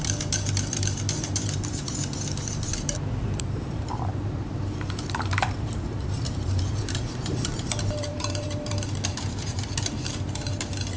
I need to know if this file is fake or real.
fake